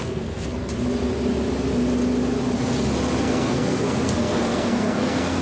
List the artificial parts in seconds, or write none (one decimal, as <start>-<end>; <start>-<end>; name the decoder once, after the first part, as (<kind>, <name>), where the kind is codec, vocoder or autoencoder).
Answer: 0.0-0.7 (codec, SNAC); 3.2-5.4